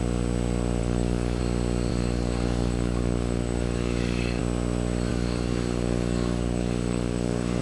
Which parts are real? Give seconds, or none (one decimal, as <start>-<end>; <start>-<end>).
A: 0.0-0.8; 1.4-1.9; 4.4-5.1